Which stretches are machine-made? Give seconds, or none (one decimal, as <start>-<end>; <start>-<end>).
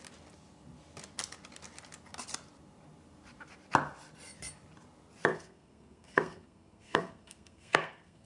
5.3-8.3